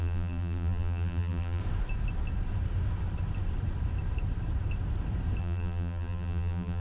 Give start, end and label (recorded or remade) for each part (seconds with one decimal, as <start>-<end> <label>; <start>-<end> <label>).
0.0-1.6 remade; 1.6-5.4 recorded; 5.4-6.8 remade